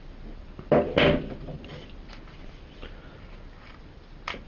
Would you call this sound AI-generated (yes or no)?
no